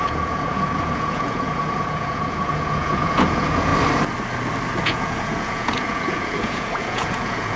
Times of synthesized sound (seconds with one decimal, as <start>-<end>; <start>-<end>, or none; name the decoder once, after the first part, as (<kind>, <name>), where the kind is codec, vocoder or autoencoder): 0.0-3.7 (vocoder, Vocos); 4.8-7.6